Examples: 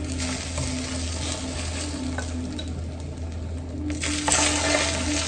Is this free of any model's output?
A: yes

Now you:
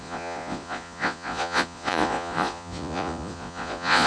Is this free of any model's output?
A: no